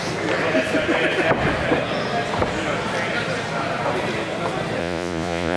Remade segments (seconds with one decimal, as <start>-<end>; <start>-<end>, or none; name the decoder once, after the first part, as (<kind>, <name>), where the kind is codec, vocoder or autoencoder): 4.8-5.6 (vocoder, Vocos)